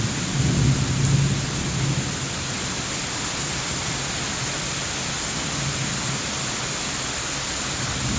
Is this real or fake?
real